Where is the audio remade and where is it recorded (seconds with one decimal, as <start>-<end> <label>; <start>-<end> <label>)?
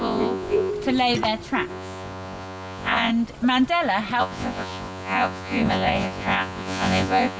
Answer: 0.0-0.7 remade; 0.7-1.7 recorded; 1.7-3.1 remade; 3.1-4.2 recorded; 4.2-7.4 remade